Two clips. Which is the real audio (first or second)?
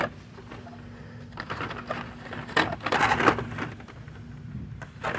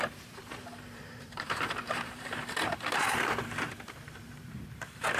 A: first